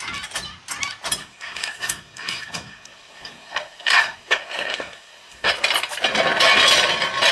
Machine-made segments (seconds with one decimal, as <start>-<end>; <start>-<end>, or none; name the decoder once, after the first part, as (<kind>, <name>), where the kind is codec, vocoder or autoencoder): 1.2-5.5 (codec, SNAC)